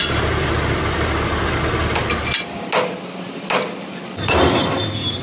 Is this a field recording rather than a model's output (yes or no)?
yes